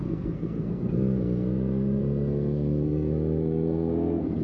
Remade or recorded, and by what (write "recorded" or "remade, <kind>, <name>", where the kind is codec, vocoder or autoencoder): remade, codec, SNAC